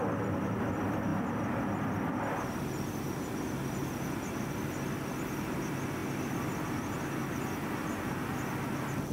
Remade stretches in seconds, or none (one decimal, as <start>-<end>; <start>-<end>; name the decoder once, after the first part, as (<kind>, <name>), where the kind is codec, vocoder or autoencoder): none